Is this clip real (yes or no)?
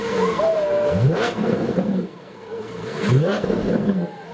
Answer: no